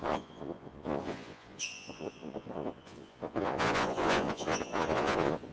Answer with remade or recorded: remade